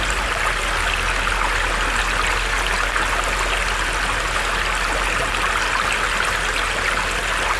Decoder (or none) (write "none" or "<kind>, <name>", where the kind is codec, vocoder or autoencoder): none